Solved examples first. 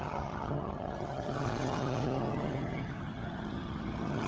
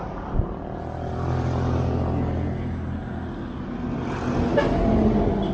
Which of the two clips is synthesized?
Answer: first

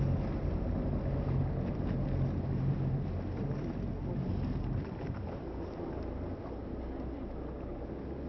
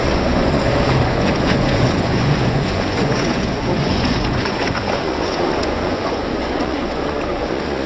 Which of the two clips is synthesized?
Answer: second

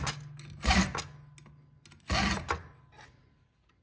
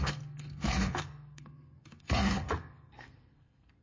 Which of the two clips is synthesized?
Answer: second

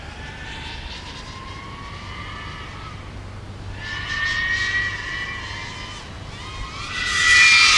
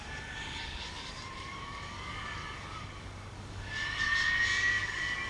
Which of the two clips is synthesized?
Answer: second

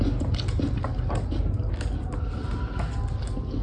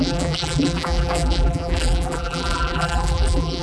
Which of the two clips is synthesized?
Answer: second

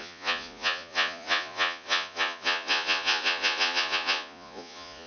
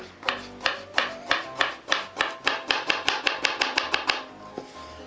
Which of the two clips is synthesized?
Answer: first